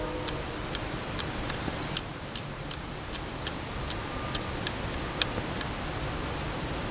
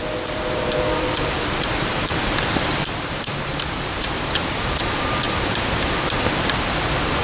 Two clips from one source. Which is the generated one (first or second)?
second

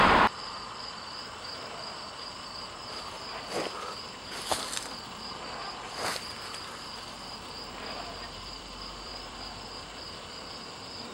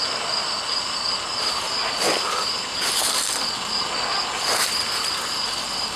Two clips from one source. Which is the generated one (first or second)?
first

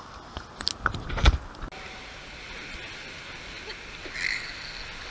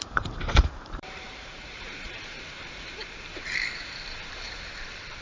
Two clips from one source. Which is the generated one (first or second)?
second